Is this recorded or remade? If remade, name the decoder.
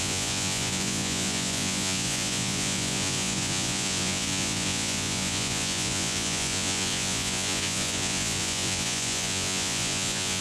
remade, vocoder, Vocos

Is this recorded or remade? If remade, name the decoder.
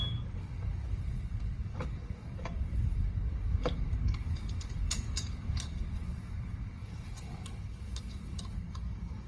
remade, codec, DAC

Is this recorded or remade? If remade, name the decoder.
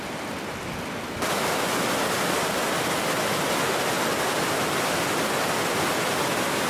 recorded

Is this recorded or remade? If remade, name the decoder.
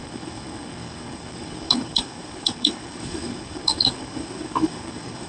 remade, codec, DAC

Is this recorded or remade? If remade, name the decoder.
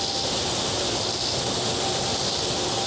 recorded